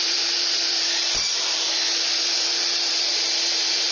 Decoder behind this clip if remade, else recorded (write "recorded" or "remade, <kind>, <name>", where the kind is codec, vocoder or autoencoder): remade, vocoder, BigVGAN v2